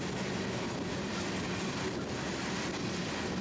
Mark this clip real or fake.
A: real